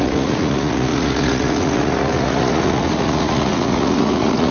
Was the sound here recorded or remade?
remade